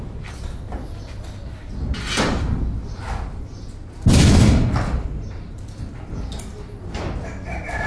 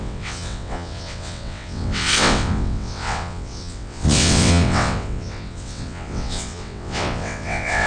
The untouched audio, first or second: first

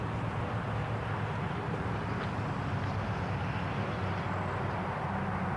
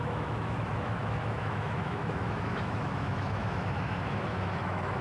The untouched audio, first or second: first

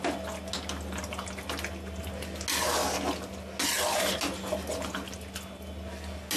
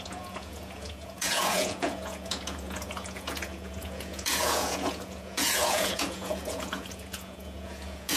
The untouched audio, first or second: first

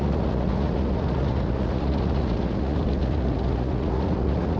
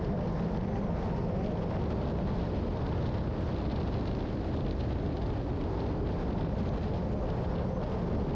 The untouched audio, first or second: second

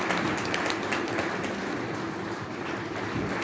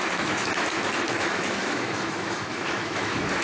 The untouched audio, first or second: first